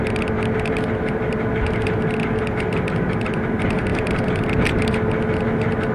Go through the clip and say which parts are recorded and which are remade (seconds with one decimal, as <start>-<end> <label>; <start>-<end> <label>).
0.0-5.9 recorded